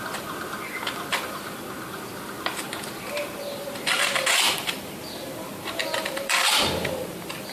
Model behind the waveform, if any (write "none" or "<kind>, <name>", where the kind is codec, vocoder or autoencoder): vocoder, BigVGAN v2